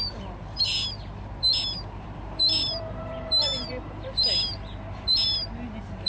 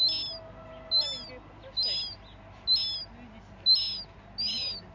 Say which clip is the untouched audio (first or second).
second